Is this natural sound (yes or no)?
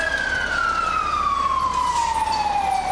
yes